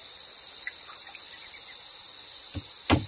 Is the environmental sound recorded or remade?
recorded